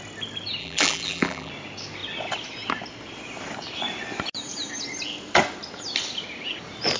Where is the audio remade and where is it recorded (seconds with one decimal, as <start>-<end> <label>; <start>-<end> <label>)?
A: 0.0-0.6 recorded; 0.6-1.5 remade; 1.5-7.0 recorded